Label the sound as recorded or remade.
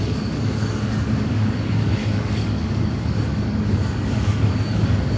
remade